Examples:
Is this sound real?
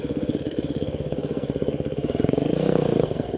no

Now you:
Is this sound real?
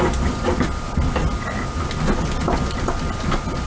yes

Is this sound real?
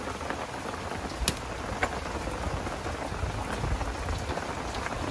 yes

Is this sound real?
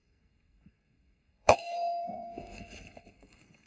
no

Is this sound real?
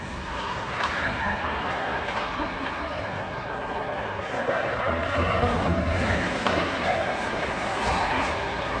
no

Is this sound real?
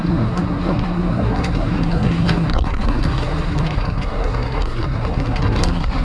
no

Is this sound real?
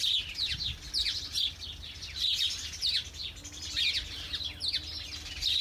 yes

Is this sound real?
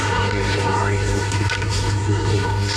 no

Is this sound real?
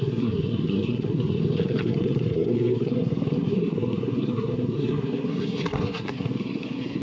no